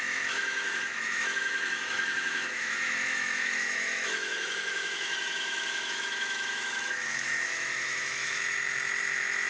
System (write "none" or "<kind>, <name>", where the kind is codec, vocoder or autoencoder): autoencoder, DAC-VAE